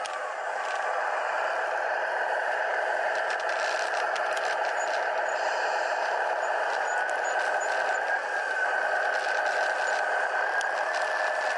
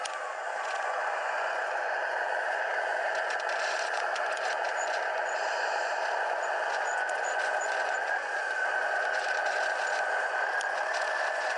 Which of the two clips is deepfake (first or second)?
second